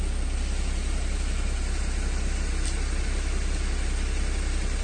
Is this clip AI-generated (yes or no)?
no